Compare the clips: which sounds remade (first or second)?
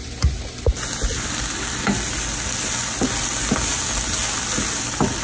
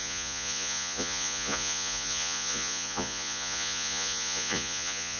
second